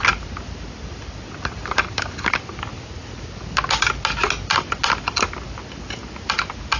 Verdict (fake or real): real